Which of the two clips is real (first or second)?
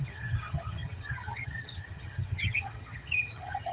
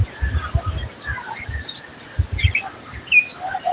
second